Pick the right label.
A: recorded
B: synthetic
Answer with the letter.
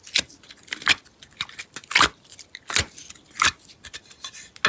A